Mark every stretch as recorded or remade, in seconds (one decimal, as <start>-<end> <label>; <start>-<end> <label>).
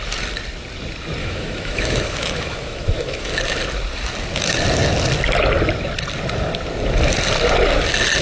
0.0-1.2 recorded; 1.2-3.3 remade; 3.3-8.2 recorded